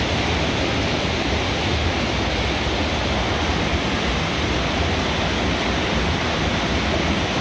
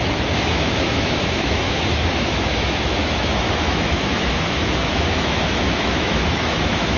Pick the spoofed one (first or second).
second